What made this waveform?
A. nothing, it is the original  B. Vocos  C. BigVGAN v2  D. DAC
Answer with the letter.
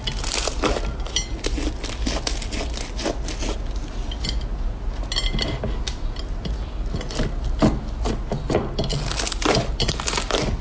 A